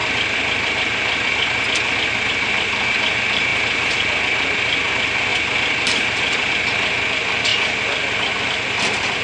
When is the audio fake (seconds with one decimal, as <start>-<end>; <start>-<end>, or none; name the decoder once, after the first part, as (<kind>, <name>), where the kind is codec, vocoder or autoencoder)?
3.5-4.1 (vocoder, BigVGAN v2); 5.3-6.5